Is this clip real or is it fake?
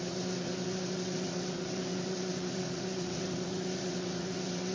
fake